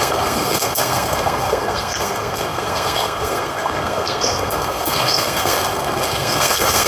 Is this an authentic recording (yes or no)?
no